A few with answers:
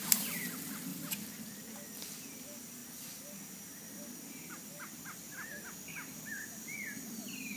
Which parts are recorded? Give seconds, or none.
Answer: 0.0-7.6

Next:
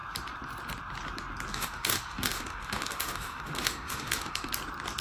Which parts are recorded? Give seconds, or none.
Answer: 0.0-1.5; 4.5-5.0

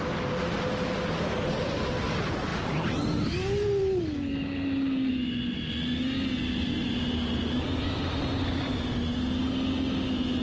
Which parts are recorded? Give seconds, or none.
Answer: 0.0-10.4

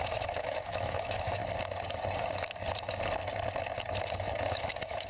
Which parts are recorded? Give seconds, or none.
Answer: 1.4-4.5